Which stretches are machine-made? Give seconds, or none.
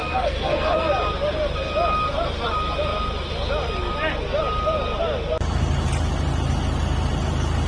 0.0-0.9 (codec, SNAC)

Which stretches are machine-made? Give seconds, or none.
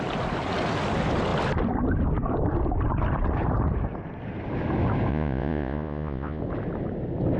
5.1-6.4 (vocoder, Vocos)